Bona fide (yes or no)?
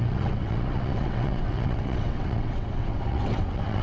no